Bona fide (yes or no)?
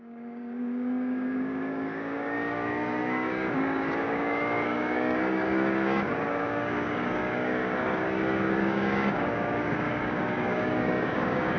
no